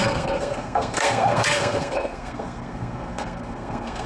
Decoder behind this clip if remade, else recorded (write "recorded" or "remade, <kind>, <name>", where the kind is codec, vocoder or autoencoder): remade, codec, SNAC